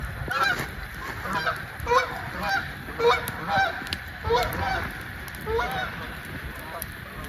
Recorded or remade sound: recorded